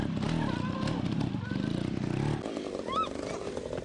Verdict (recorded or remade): recorded